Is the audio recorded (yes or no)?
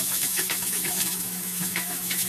no